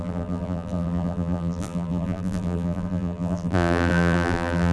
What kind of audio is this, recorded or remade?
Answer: remade